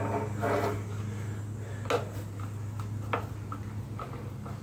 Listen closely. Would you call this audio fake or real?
real